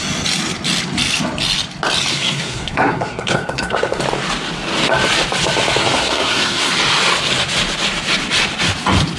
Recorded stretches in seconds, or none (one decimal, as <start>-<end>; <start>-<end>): 0.0-2.1; 4.0-5.8; 6.7-9.2